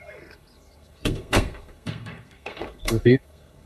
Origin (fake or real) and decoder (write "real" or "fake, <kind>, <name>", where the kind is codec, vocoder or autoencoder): fake, codec, SNAC